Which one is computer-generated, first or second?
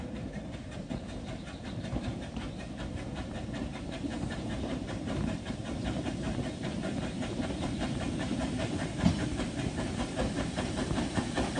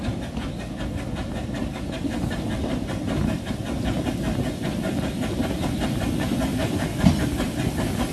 first